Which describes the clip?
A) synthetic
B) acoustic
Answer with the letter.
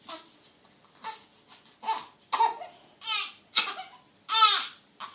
B